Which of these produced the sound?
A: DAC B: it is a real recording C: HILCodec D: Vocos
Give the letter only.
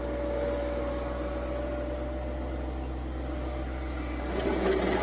B